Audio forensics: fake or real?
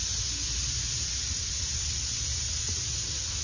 real